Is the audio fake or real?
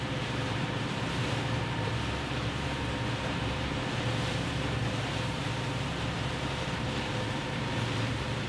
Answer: fake